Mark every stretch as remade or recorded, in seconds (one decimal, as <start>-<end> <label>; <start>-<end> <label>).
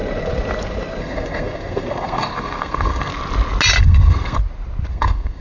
0.0-1.0 recorded; 1.0-3.1 remade; 3.1-3.8 recorded; 3.8-4.4 remade; 4.4-4.9 recorded; 4.9-5.4 remade